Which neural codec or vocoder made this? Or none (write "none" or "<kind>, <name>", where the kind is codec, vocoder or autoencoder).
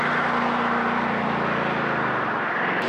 none